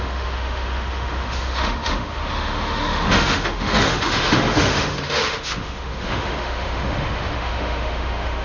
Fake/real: fake